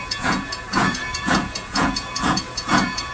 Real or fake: fake